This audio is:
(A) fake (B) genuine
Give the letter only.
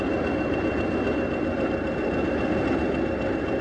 B